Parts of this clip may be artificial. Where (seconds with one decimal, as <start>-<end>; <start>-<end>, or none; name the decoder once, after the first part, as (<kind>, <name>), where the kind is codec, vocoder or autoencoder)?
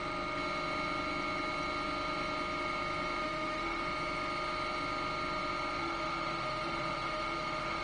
3.2-3.8 (autoencoder, DAC-VAE); 5.8-7.8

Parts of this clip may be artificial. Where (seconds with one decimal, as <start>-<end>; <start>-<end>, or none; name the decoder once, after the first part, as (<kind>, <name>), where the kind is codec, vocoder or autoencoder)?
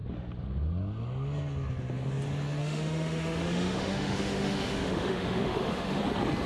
2.6-6.0 (autoencoder, DAC-VAE)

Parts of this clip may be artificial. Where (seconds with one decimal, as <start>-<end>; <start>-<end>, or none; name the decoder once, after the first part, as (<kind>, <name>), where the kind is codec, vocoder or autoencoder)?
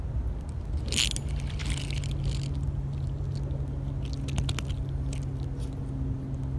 none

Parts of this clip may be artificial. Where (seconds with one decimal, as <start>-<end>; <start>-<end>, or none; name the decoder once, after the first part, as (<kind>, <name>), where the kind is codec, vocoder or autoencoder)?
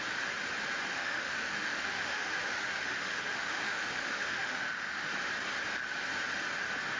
0.9-5.1 (autoencoder, DAC-VAE)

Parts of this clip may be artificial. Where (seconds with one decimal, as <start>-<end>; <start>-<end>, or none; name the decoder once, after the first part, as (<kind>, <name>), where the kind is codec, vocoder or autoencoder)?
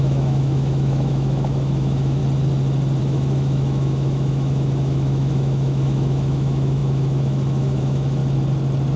0.0-2.2 (autoencoder, DAC-VAE); 3.0-8.2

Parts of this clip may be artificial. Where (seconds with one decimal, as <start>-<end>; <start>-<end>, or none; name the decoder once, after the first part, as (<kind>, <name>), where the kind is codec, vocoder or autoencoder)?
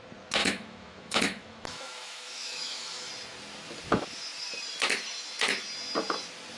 0.4-3.1 (autoencoder, DAC-VAE)